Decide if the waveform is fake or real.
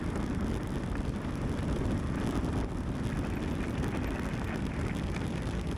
real